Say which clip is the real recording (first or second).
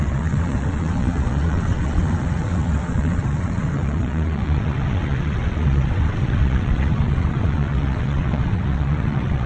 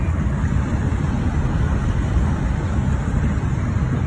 second